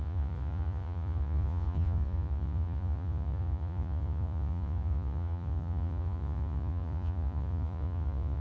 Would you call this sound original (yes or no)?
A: no